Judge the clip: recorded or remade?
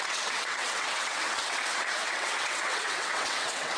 remade